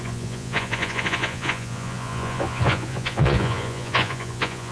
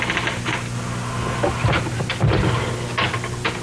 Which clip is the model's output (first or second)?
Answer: first